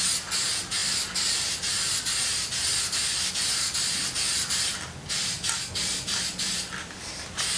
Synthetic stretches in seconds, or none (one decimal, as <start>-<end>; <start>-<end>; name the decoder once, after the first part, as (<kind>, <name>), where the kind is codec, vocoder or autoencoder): none